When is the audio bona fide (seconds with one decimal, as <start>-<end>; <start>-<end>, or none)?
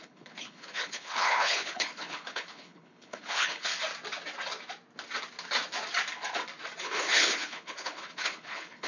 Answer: 3.7-6.8